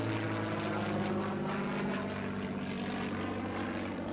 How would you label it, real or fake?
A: real